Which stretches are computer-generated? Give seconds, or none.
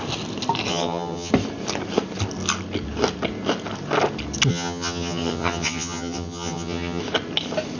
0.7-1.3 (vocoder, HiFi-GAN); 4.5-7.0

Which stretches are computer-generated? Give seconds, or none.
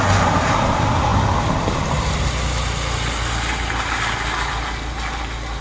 none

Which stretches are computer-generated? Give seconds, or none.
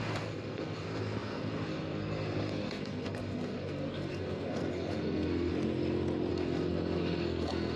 0.0-5.5 (codec, SNAC); 6.3-7.8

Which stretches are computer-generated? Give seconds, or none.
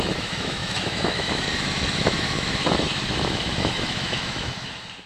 0.0-5.1 (autoencoder, DAC-VAE)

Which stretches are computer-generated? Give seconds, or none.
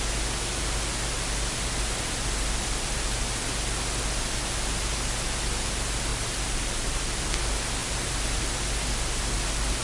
6.1-7.3 (vocoder, BigVGAN v2)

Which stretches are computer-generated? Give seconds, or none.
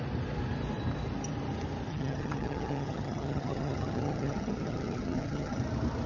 1.9-5.6 (vocoder, HiFi-GAN)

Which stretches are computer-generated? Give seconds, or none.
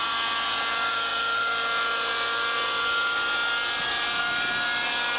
none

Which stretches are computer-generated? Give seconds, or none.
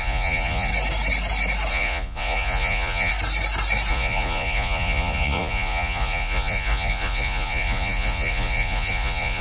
0.0-0.7 (vocoder, Vocos); 1.7-3.1; 3.9-9.4